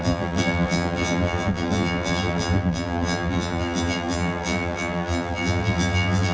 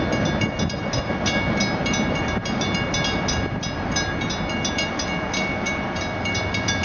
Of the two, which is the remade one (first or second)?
first